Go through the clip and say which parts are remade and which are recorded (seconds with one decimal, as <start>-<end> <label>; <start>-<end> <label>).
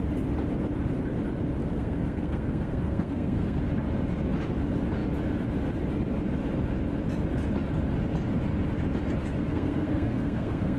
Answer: 0.0-1.6 recorded; 1.6-3.6 remade; 3.6-9.2 recorded; 9.2-10.8 remade